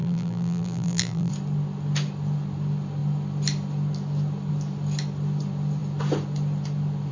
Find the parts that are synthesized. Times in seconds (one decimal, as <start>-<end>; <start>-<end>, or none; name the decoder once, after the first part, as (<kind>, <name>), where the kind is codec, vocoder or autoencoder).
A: 0.0-1.3 (vocoder, BigVGAN v2)